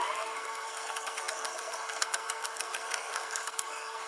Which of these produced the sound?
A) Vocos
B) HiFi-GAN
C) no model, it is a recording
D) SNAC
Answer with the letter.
D